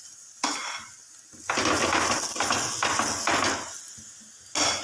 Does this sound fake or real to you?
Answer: real